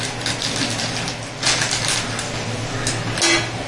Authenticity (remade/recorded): recorded